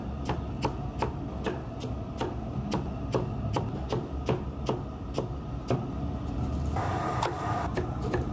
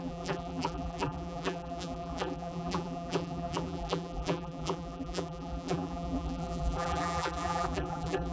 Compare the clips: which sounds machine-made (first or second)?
second